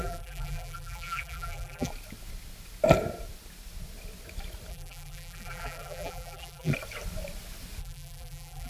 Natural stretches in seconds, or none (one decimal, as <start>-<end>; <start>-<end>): 1.9-4.7; 6.7-7.8